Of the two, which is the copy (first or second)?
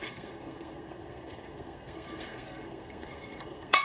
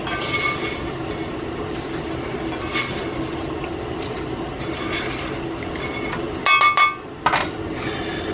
first